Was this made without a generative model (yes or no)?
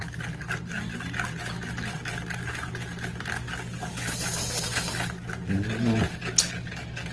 yes